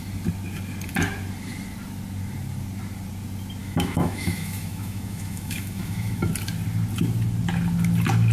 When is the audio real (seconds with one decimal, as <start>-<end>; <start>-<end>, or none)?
0.0-3.6; 6.3-8.3